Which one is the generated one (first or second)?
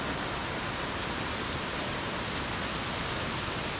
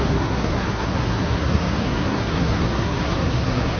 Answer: second